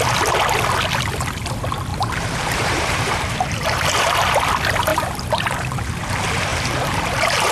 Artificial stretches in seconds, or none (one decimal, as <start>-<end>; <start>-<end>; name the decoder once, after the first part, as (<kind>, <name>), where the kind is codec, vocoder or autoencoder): 1.9-4.1 (vocoder, BigVGAN v2); 4.9-6.1; 6.5-7.5